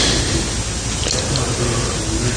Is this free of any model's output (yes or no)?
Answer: yes